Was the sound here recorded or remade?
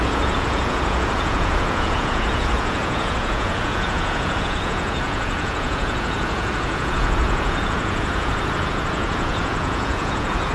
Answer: remade